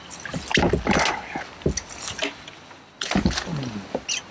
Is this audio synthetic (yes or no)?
no